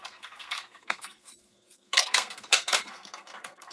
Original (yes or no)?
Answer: no